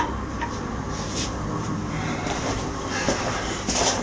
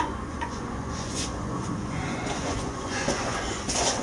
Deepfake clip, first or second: second